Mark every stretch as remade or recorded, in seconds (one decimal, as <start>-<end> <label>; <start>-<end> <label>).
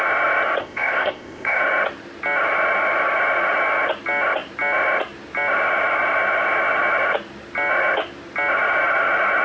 0.0-0.6 recorded; 0.6-1.6 remade; 1.6-9.4 recorded